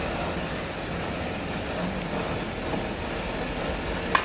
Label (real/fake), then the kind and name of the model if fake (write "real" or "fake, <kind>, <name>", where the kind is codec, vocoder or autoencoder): real